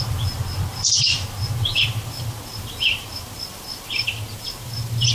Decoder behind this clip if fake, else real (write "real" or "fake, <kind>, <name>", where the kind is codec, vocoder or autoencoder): fake, vocoder, BigVGAN v2